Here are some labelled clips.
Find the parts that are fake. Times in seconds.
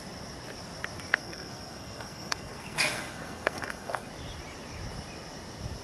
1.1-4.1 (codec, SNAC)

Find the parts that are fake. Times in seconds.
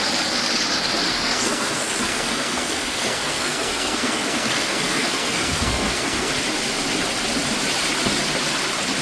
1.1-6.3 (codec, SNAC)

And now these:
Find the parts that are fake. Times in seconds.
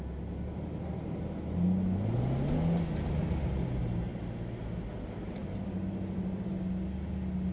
5.4-6.5 (vocoder, BigVGAN v2)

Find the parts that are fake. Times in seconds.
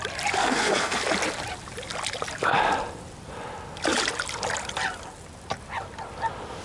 0.4-1.0 (codec, SNAC)